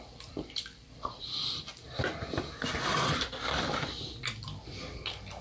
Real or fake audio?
real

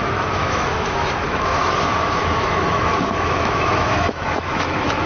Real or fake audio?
fake